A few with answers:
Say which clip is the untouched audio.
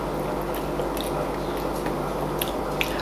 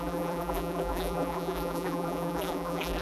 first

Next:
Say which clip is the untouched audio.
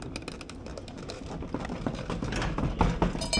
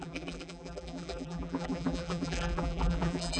first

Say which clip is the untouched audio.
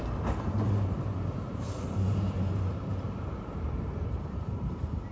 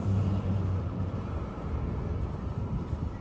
second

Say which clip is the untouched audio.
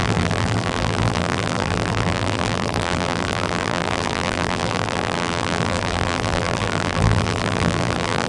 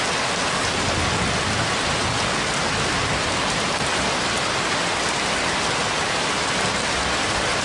second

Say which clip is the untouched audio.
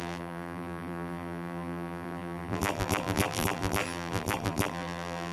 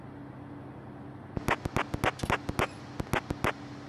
second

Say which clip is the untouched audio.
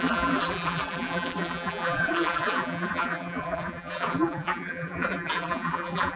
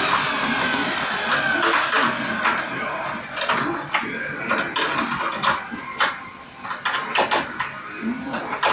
second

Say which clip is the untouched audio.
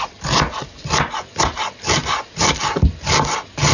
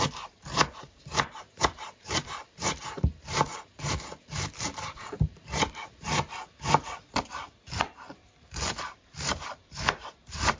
first